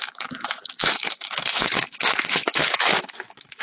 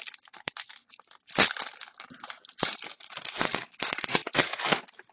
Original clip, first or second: second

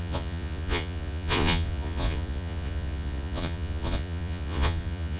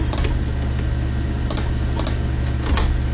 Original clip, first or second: second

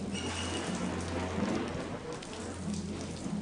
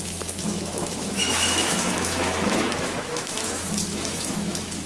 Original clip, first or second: first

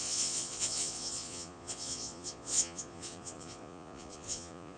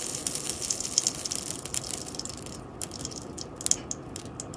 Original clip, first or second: second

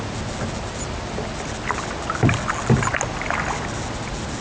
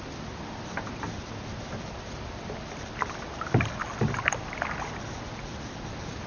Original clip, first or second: first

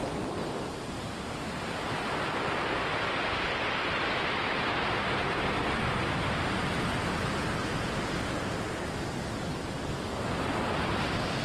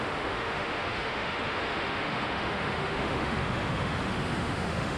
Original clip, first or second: first